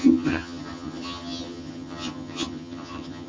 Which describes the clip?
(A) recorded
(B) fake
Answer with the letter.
B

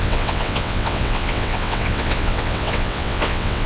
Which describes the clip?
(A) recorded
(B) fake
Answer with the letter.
B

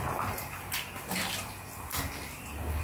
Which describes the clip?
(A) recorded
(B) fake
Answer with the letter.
A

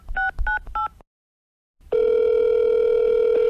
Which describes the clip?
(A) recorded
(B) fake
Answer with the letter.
A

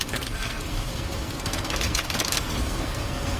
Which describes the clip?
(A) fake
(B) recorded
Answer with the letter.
A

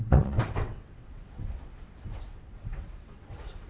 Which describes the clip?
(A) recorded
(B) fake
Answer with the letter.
B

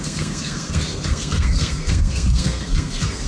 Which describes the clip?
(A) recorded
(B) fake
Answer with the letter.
B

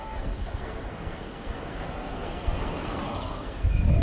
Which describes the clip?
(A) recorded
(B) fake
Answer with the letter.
B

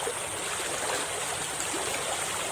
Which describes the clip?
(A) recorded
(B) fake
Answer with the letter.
A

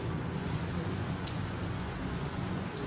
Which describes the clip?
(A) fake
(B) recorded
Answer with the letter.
A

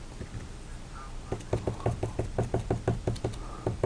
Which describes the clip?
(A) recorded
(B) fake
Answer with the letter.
A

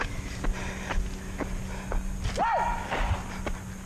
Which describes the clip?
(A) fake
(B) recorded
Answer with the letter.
B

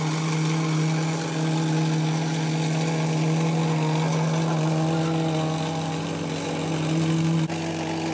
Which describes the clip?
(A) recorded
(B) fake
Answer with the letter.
A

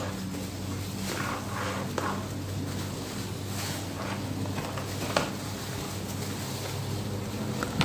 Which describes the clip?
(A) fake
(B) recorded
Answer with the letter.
B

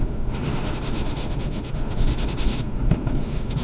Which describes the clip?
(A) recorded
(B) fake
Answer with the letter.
B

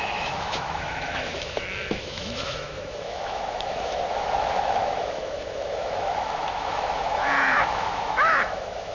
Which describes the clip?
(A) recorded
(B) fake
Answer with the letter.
B